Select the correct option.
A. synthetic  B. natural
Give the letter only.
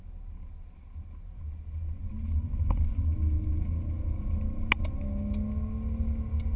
B